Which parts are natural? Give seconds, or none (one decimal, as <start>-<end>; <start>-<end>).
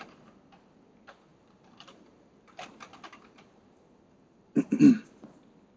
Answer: 0.0-1.3; 4.8-5.8